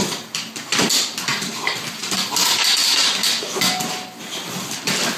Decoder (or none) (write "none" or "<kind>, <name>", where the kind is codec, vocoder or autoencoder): none